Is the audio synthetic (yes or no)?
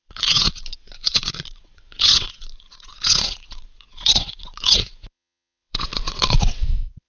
yes